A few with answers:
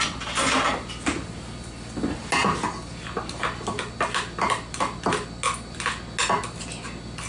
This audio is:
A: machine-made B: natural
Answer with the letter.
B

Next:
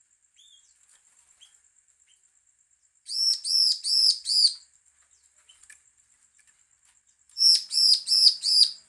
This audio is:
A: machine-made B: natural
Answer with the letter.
A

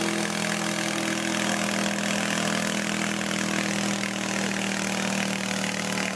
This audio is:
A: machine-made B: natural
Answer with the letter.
B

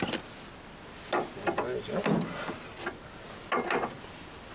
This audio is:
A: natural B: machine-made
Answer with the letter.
A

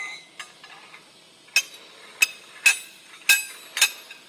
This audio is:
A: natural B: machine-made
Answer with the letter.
A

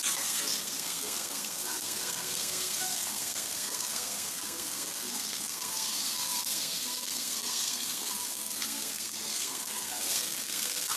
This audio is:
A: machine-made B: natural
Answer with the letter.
A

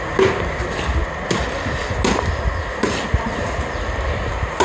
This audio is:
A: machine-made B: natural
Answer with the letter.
B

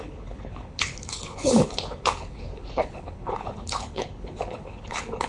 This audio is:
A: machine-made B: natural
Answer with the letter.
A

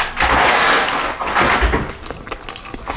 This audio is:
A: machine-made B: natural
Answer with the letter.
B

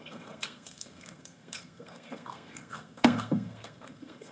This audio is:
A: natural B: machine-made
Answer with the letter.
B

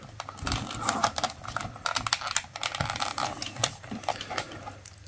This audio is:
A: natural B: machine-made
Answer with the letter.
A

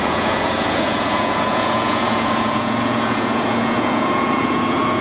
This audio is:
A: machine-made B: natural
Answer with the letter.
A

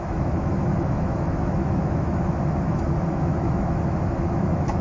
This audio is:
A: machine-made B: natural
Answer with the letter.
A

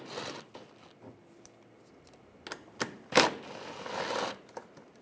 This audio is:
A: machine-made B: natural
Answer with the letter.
B